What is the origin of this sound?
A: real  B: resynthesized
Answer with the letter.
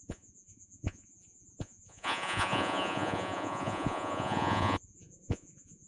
B